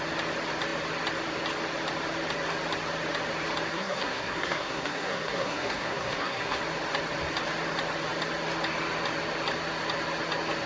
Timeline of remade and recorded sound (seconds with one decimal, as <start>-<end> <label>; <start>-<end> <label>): 0.0-3.7 recorded; 3.7-6.6 remade; 6.6-10.7 recorded